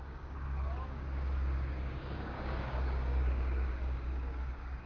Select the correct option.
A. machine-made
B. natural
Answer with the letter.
A